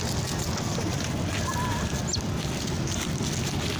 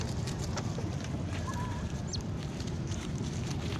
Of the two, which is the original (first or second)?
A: first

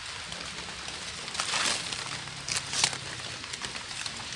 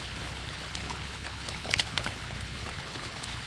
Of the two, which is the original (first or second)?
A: first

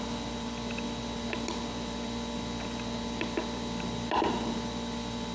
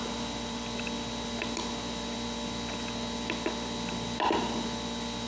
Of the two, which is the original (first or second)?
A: second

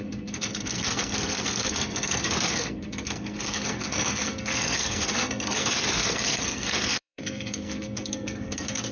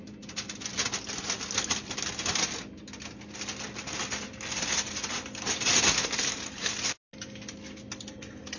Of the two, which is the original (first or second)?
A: second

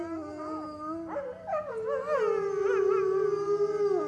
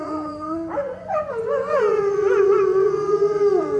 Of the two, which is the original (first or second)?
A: first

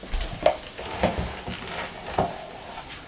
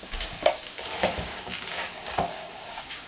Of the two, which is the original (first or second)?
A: first